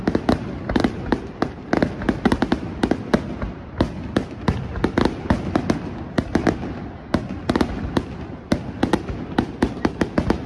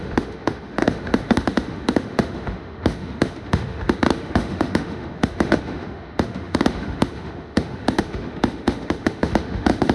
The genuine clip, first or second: first